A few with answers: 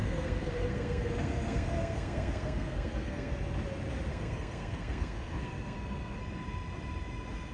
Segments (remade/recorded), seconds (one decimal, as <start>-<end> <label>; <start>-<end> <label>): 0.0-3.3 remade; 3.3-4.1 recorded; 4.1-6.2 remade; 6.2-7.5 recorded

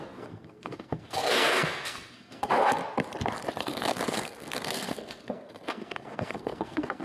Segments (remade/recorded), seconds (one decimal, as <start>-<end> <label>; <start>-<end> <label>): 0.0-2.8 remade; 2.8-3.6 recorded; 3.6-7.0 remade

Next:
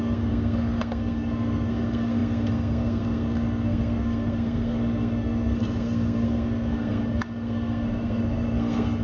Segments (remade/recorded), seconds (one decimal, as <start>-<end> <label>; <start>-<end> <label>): 0.0-9.0 remade

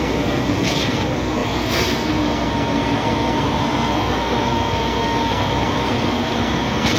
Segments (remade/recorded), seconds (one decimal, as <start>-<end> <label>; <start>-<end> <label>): 0.0-7.0 remade

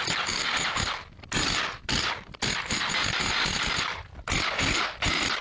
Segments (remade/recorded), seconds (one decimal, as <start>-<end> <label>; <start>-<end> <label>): 0.0-5.4 recorded

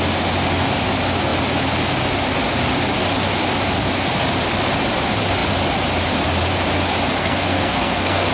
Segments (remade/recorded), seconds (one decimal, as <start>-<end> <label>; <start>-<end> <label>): 0.0-7.2 recorded; 7.2-8.3 remade